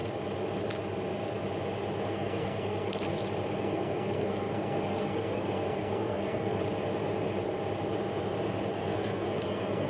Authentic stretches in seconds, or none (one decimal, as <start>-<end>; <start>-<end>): 0.0-2.1; 3.1-3.6; 6.6-8.7